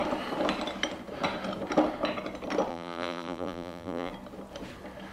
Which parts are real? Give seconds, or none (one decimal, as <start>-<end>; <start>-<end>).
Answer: 0.0-2.7; 4.1-5.1